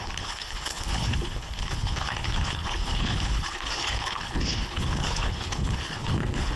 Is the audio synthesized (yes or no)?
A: yes